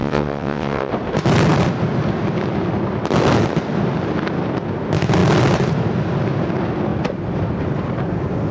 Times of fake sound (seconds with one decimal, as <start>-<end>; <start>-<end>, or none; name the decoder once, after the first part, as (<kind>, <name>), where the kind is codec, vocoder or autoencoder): 0.0-0.9 (vocoder, WaveNeXt)